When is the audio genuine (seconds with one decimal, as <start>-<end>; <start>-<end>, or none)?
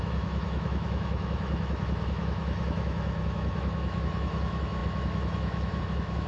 none